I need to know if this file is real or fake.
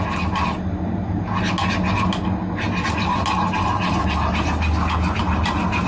real